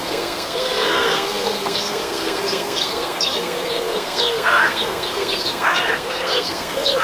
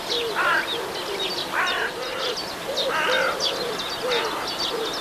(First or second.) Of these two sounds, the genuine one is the second